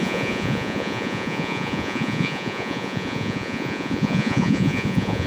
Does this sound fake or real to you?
fake